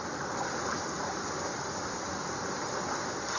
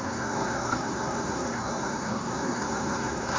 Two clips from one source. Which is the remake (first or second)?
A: second